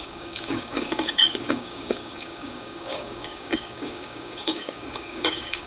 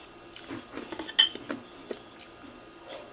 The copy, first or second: first